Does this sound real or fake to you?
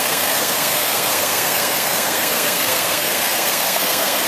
fake